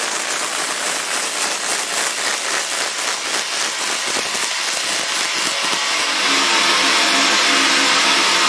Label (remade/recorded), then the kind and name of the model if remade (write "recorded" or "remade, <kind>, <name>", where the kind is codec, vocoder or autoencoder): recorded